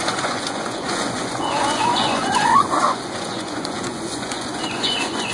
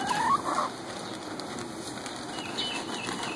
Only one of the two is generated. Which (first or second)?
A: first